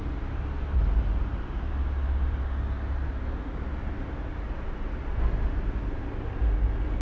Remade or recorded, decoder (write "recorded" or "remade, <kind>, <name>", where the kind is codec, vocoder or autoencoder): recorded